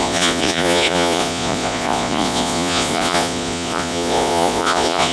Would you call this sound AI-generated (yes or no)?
yes